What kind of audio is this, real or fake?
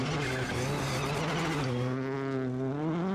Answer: real